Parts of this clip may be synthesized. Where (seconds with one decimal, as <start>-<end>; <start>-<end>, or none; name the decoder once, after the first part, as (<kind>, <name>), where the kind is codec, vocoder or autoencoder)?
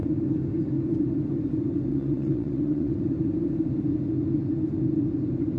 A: 1.9-3.0 (vocoder, WaveNeXt)